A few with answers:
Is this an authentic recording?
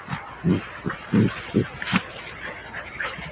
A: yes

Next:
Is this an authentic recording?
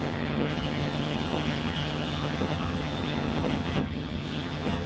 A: no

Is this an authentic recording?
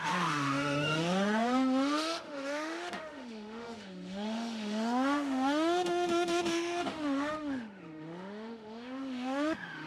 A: no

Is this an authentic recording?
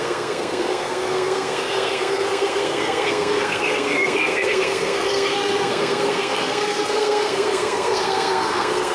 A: no